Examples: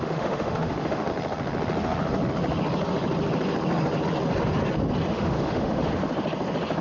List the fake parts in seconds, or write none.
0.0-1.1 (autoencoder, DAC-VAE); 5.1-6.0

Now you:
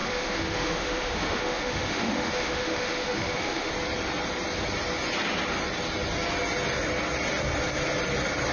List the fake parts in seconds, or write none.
0.0-3.7 (autoencoder, DAC-VAE)

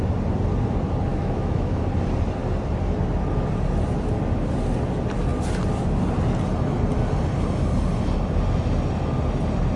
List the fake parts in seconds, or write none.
1.1-1.8 (autoencoder, DAC-VAE)